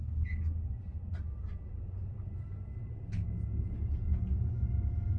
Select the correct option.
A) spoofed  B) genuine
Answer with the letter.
B